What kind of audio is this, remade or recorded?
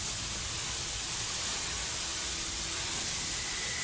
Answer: recorded